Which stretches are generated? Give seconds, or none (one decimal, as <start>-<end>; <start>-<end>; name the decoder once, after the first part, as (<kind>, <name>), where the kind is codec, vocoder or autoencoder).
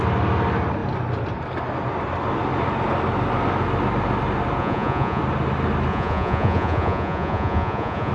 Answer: 4.6-5.2 (vocoder, Vocos); 5.9-8.1